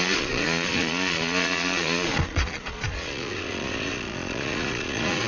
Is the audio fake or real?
fake